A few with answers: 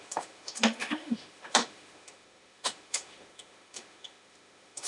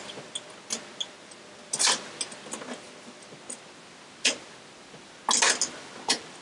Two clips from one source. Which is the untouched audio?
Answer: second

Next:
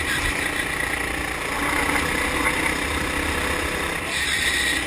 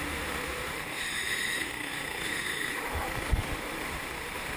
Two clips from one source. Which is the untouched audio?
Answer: first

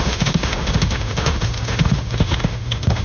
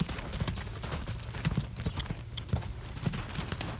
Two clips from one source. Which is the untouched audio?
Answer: second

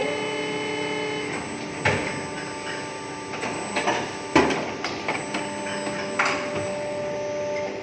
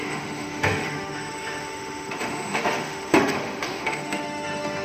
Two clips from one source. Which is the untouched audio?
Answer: first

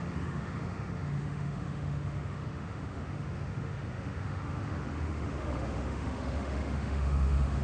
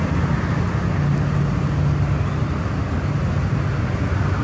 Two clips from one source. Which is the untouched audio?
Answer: second